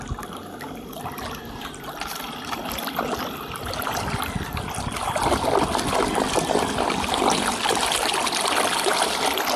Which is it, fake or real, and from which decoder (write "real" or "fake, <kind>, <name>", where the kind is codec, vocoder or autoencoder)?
real